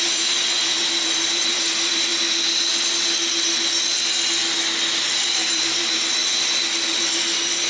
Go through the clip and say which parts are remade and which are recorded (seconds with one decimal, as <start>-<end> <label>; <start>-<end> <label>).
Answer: 0.0-2.1 remade; 2.1-5.1 recorded; 5.1-6.2 remade; 6.2-6.9 recorded; 6.9-7.7 remade